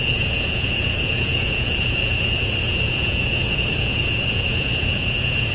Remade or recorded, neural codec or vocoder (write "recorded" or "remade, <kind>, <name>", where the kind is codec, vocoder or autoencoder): remade, vocoder, Vocos